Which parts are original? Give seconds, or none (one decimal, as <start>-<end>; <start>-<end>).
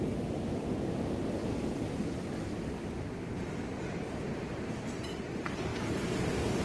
0.0-6.6